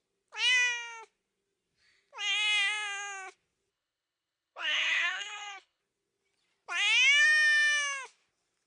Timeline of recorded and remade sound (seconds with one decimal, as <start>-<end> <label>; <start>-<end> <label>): 0.0-3.7 recorded; 3.7-5.8 remade; 5.8-8.7 recorded